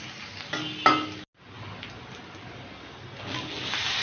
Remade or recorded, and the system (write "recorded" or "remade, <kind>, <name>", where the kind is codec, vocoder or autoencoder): recorded